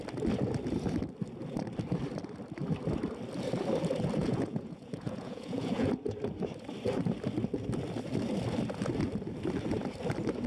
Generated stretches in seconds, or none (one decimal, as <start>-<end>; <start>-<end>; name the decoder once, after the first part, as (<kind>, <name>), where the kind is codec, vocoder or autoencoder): 4.2-5.9 (vocoder, Vocos)